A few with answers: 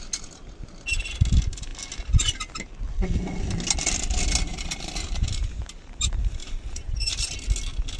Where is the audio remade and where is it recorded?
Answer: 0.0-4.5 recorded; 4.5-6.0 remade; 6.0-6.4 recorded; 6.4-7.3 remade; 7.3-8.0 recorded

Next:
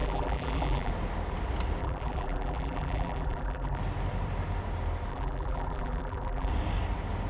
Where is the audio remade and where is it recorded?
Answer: 0.0-0.9 remade; 0.9-1.8 recorded; 1.8-3.8 remade; 3.8-5.1 recorded; 5.1-6.5 remade; 6.5-7.3 recorded